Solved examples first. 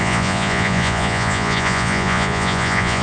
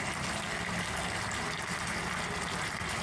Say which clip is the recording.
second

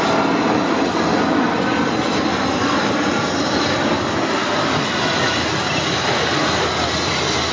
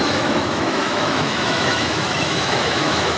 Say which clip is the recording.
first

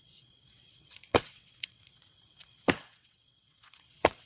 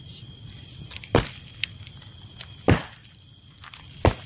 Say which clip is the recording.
second